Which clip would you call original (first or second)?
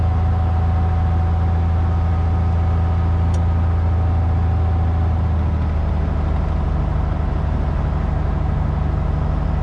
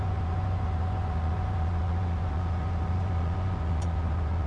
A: first